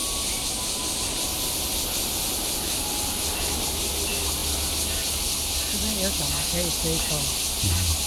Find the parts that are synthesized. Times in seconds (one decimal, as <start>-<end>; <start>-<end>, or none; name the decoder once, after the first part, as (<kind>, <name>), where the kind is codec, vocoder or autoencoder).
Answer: none